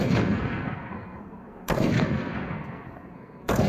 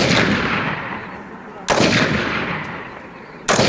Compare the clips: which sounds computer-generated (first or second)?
first